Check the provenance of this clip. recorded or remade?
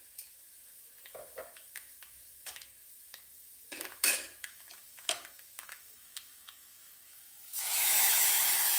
remade